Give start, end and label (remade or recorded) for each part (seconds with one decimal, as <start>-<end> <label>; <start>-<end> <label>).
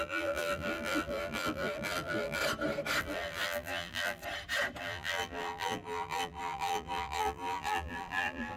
0.0-2.4 remade; 2.4-3.0 recorded; 3.0-4.2 remade; 4.2-4.8 recorded; 4.8-8.6 remade